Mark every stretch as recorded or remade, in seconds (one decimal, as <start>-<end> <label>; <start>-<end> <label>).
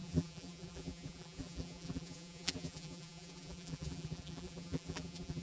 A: 0.0-5.4 remade